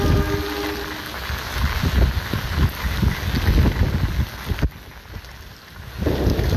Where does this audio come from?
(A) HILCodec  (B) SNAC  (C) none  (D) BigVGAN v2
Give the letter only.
C